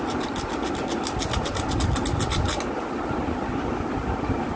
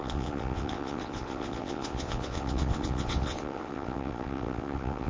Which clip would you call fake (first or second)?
second